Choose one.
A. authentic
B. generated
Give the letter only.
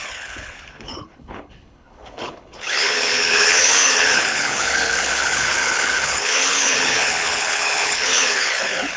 B